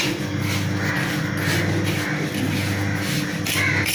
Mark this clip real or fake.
real